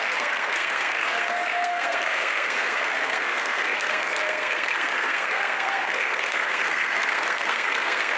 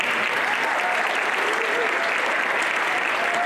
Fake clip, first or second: first